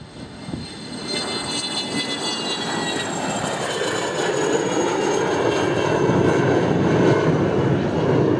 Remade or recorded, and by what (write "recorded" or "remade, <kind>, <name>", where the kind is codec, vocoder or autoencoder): recorded